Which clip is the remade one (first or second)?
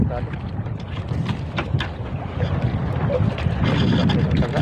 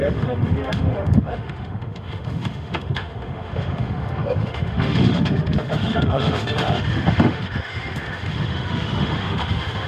second